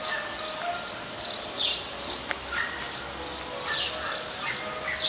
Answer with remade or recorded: recorded